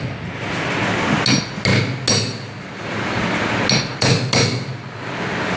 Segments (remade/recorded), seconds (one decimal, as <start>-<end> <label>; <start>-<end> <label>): 0.0-5.6 recorded